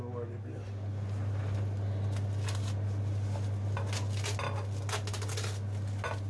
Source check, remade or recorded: recorded